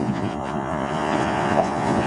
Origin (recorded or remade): remade